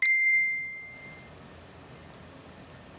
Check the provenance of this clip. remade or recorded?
recorded